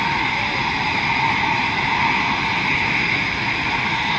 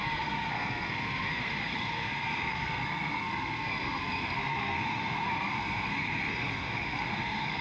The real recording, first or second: first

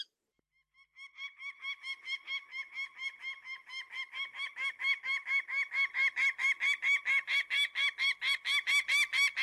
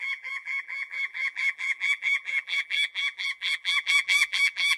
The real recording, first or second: first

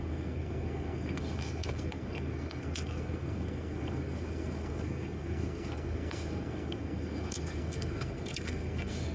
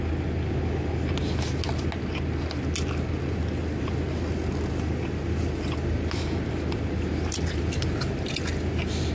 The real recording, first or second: second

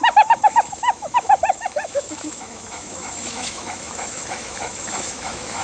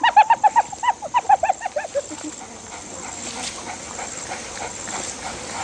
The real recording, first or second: second